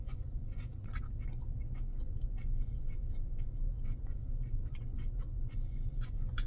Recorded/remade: remade